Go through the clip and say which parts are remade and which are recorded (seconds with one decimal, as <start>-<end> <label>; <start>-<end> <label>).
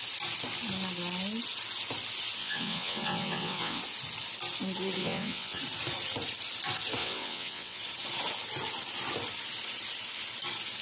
0.0-2.4 recorded; 2.4-3.8 remade; 3.8-5.0 recorded; 5.0-5.6 remade; 5.6-7.0 recorded; 7.0-7.8 remade; 7.8-10.8 recorded